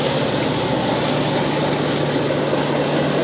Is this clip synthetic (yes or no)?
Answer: no